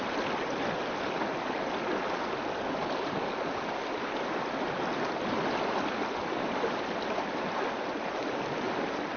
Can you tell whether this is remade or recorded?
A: recorded